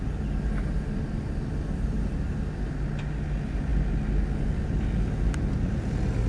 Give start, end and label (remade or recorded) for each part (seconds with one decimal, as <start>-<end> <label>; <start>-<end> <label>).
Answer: 0.0-6.3 recorded